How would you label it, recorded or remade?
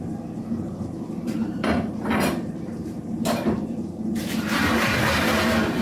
remade